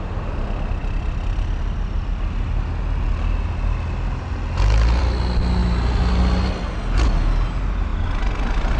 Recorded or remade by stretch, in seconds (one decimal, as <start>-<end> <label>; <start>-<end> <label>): 0.0-8.8 recorded